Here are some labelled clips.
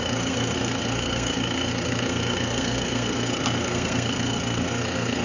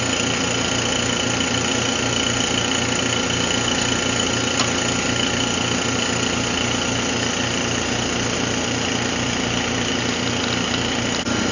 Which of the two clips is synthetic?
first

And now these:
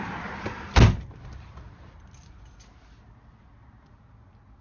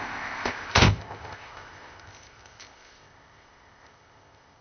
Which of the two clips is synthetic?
second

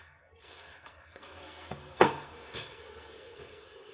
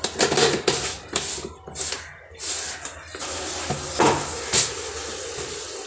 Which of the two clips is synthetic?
first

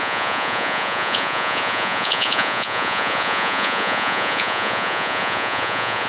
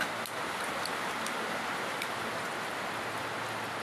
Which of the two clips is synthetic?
first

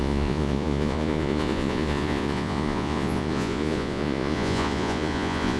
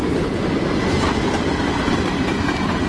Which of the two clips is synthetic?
first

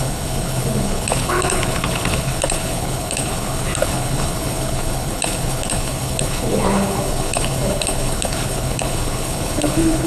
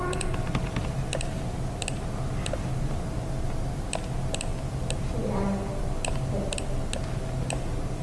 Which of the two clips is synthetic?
first